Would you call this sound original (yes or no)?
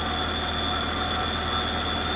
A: yes